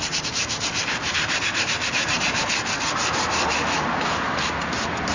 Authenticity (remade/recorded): remade